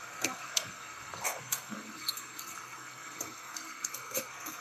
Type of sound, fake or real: fake